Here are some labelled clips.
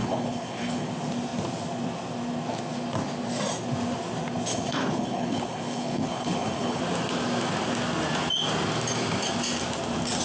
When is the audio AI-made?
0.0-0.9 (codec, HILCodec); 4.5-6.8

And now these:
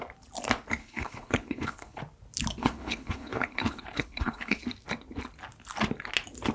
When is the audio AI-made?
0.8-2.0 (codec, HILCodec); 2.6-4.6

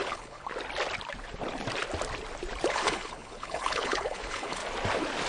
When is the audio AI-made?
0.0-0.5 (codec, HILCodec); 2.7-4.6

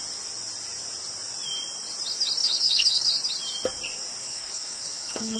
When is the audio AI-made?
2.4-3.1 (codec, HILCodec); 4.2-5.4